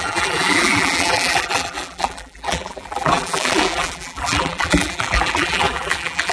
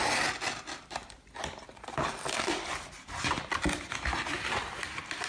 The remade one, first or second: first